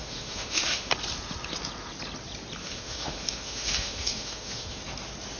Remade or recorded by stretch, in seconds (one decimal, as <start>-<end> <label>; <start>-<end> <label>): 0.0-0.9 remade; 0.9-2.6 recorded; 2.6-4.8 remade; 4.8-5.4 recorded